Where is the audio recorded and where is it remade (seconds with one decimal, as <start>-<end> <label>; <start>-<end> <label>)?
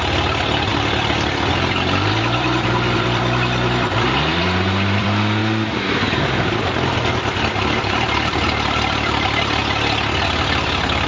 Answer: 0.0-5.4 remade; 5.4-5.9 recorded; 5.9-9.6 remade; 9.6-10.2 recorded; 10.2-11.1 remade